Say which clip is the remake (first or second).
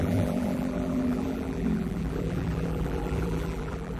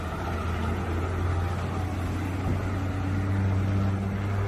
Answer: first